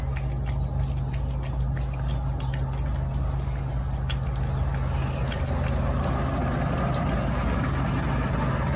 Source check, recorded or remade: recorded